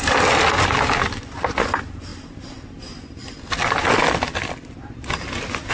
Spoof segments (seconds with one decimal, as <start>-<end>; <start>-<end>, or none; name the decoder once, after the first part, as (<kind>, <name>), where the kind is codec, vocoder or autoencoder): none